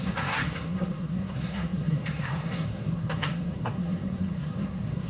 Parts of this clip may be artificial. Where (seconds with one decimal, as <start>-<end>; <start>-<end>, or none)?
0.0-5.1